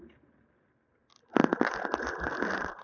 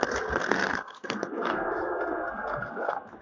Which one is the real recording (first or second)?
first